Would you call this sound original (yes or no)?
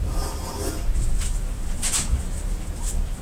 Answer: yes